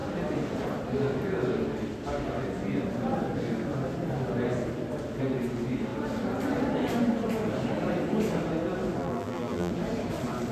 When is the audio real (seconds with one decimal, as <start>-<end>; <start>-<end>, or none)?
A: 0.0-9.0; 9.7-10.5